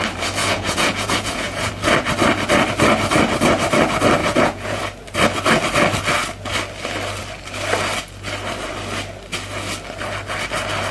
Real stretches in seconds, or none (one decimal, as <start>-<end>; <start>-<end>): 0.0-0.4; 1.7-4.2; 4.8-10.9